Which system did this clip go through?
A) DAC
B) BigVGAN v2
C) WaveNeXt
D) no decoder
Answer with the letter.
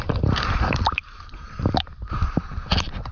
B